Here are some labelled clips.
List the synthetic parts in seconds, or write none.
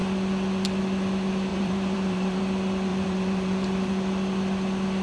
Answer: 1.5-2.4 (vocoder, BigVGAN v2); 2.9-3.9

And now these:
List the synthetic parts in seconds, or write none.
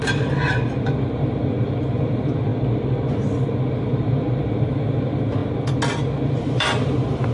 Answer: 0.0-2.5 (vocoder, BigVGAN v2); 3.7-5.4; 5.9-7.3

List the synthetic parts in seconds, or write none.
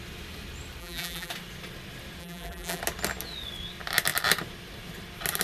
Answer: 0.8-1.3 (vocoder, BigVGAN v2); 2.2-2.8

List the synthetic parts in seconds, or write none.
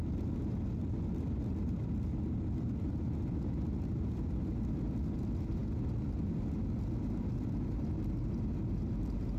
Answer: none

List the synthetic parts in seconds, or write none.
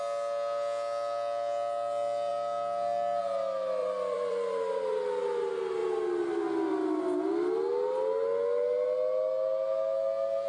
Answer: 3.8-5.0 (vocoder, BigVGAN v2)